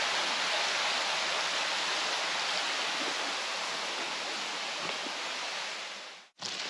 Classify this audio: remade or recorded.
recorded